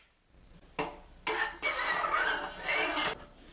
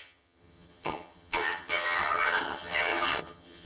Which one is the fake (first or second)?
second